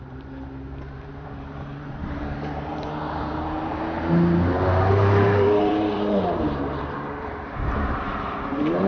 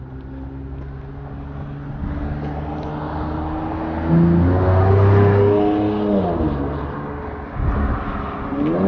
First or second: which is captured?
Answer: second